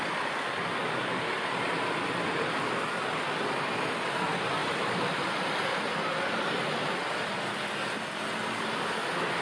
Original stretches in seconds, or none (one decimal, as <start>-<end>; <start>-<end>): 0.0-9.4